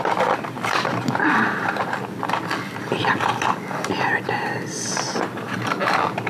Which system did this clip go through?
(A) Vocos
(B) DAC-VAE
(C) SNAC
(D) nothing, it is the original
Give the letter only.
D